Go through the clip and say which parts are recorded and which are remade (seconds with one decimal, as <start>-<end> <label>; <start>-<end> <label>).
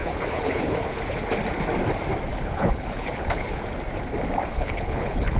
0.0-1.0 remade; 1.0-2.3 recorded; 2.3-3.6 remade; 3.6-4.5 recorded; 4.5-5.4 remade